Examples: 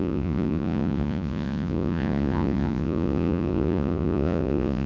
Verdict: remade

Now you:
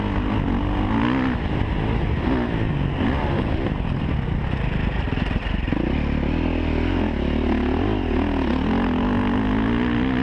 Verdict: recorded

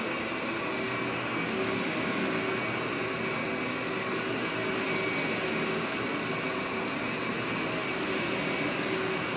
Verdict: recorded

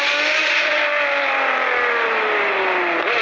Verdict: recorded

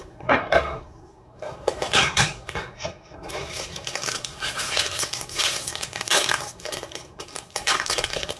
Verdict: remade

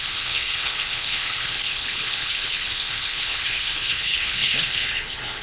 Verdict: remade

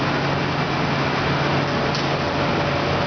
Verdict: recorded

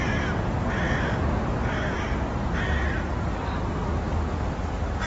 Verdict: recorded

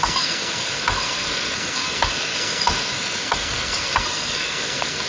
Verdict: remade